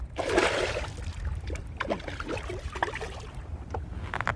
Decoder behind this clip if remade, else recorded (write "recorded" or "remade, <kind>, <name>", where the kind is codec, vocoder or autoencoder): recorded